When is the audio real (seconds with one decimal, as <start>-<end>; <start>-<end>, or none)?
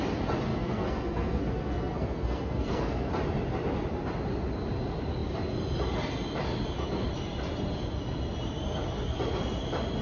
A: 0.0-0.5; 3.1-10.0